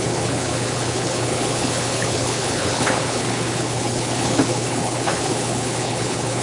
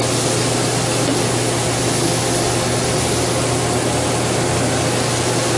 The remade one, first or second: first